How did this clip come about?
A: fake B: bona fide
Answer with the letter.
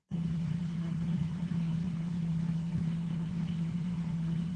A